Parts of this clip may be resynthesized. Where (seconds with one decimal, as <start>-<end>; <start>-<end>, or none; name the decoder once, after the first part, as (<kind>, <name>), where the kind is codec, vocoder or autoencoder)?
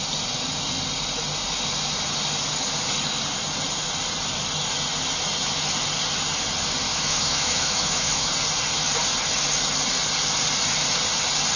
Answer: 6.9-8.3 (autoencoder, DAC-VAE)